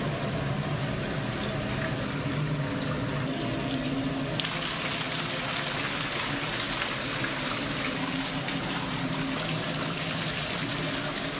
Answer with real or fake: real